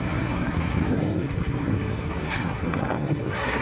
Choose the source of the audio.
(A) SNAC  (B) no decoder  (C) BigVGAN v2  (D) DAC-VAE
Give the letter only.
A